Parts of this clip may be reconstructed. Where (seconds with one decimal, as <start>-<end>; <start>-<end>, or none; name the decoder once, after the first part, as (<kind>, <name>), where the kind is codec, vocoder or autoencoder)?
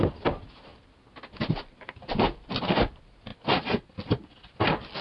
none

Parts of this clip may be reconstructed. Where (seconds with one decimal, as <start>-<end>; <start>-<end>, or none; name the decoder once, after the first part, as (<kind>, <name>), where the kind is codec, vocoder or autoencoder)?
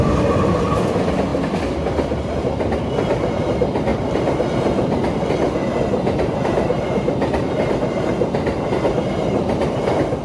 none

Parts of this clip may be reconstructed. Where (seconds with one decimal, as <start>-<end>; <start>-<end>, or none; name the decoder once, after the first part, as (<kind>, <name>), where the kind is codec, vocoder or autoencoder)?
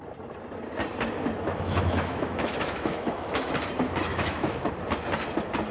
1.5-3.5 (autoencoder, DAC-VAE); 4.1-4.7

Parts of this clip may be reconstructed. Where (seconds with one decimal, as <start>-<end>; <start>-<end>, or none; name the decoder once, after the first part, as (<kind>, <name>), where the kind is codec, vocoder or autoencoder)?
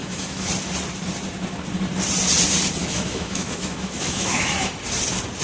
0.0-0.5 (autoencoder, DAC-VAE); 2.8-4.5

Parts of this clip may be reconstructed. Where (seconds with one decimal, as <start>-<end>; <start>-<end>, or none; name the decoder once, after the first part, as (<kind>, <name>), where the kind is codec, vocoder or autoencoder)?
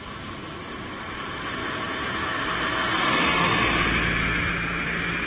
none